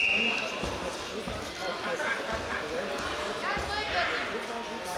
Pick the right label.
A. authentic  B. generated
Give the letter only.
A